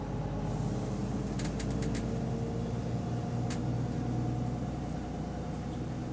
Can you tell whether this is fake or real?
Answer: real